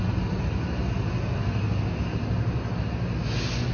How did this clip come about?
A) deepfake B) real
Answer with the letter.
B